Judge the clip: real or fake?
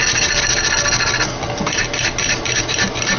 real